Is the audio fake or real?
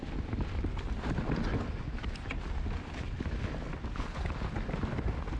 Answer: real